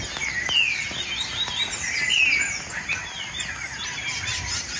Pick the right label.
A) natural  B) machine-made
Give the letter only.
A